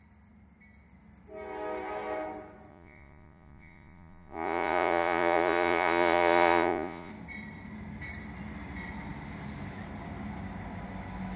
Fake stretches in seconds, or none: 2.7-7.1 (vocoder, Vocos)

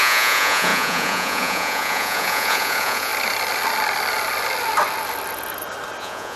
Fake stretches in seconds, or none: 0.0-3.1 (vocoder, Vocos); 6.0-6.4

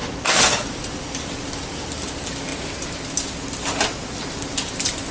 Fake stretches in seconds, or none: none

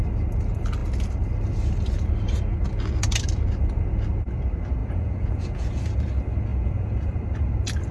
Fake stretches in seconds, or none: 4.8-5.8 (vocoder, Vocos); 6.5-7.2

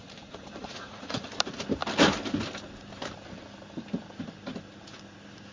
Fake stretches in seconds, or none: 0.0-1.3 (vocoder, Vocos)

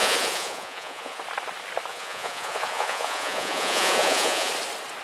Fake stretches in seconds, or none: 0.0-1.2 (vocoder, Vocos); 1.9-4.5